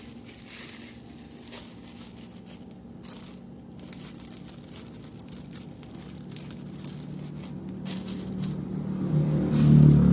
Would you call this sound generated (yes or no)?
no